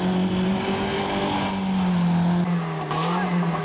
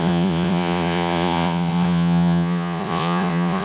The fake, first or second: second